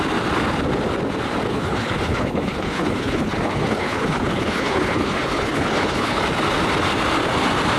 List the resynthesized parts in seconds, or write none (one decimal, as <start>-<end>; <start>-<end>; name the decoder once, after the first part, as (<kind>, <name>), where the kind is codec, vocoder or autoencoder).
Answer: 1.5-6.2 (codec, HILCodec)